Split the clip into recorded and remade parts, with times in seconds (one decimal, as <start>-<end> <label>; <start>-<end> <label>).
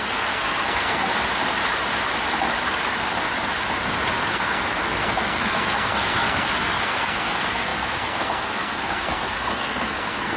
0.0-1.1 remade; 1.1-4.2 recorded; 4.2-10.4 remade